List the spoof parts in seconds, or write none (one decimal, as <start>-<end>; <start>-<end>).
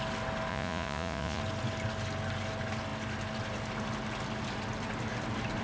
0.5-1.4